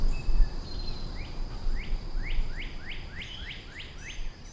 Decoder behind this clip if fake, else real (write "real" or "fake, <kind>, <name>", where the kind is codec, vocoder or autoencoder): real